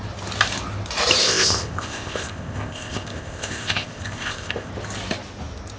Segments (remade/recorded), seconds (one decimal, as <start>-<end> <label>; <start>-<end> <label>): 0.0-1.2 recorded; 1.2-4.7 remade; 4.7-5.8 recorded

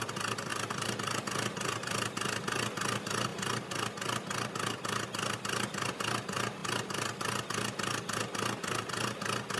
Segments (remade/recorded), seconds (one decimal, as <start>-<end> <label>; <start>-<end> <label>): 0.0-0.5 recorded; 0.5-1.2 remade; 1.2-6.6 recorded; 6.6-8.2 remade; 8.2-9.6 recorded

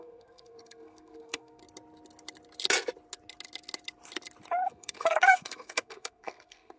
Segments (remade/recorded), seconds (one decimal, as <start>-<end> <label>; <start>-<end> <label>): 0.0-1.6 remade; 1.6-4.7 recorded; 4.7-6.8 remade

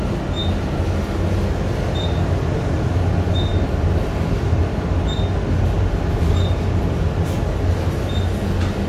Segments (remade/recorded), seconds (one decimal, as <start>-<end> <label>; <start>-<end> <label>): 0.0-8.9 recorded